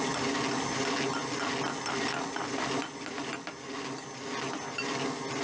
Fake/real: real